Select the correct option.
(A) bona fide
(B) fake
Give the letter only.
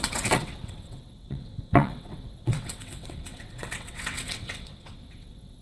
B